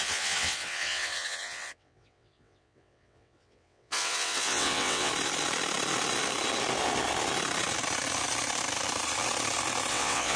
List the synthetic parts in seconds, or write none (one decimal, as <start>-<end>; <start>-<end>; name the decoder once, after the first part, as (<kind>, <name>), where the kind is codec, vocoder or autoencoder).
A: 0.0-5.1 (vocoder, WaveNeXt); 9.9-10.4